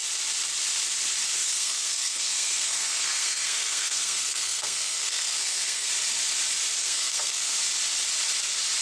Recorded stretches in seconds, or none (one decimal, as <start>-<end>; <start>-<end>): 0.0-1.4; 5.9-6.8; 7.6-8.8